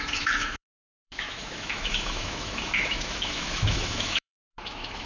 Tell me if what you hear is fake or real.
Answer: fake